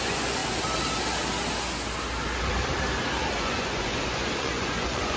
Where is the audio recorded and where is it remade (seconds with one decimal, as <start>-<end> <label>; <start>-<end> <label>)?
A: 0.0-0.4 remade; 0.4-3.4 recorded; 3.4-5.2 remade